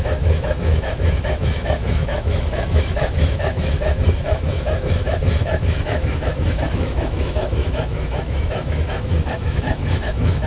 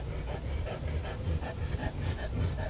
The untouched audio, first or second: second